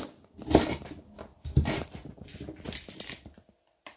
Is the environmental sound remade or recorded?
recorded